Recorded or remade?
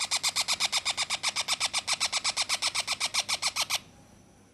recorded